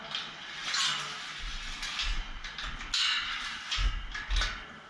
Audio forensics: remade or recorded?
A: recorded